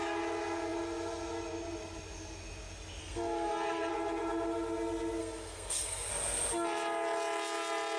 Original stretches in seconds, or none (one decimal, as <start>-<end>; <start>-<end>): 0.0-3.0; 3.9-5.2; 6.1-8.0